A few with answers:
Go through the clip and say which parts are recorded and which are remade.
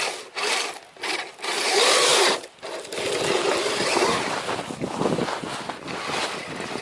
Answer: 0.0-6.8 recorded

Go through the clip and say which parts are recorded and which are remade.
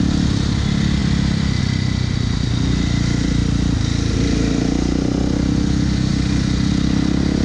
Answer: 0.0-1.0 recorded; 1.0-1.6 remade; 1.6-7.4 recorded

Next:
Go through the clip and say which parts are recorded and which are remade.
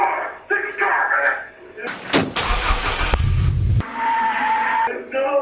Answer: 0.0-2.2 recorded; 2.2-3.0 remade; 3.0-5.4 recorded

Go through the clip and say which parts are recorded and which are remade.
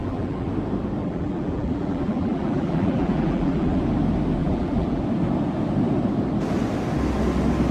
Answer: 0.0-0.5 remade; 0.5-1.0 recorded; 1.0-3.8 remade; 3.8-4.4 recorded; 4.4-5.0 remade; 5.0-7.7 recorded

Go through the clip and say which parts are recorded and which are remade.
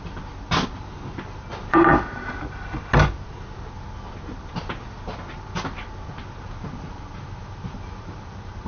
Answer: 0.0-0.7 recorded; 0.7-1.9 remade; 1.9-6.4 recorded; 6.4-8.7 remade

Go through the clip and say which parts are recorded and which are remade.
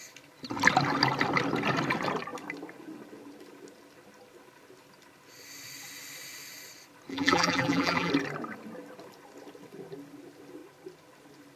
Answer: 0.0-7.1 recorded; 7.1-8.1 remade; 8.1-11.6 recorded